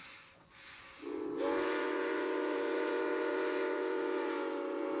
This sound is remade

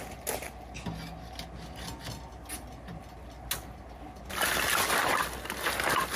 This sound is recorded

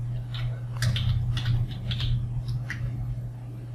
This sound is recorded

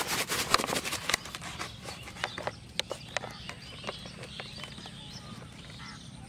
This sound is recorded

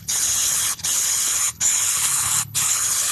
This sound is remade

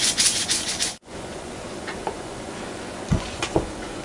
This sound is remade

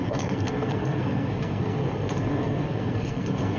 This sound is remade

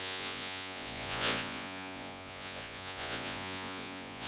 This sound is remade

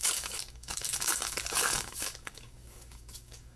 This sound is remade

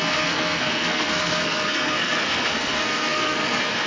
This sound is remade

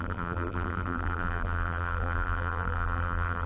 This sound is remade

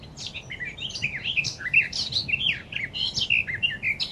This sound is recorded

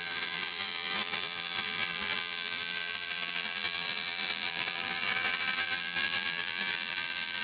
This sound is remade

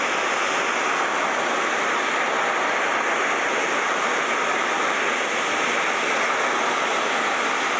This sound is recorded